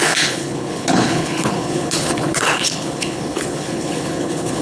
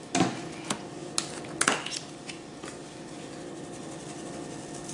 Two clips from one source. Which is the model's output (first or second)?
first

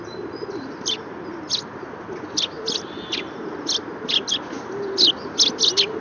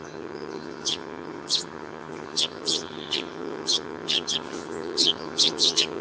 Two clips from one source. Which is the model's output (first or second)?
second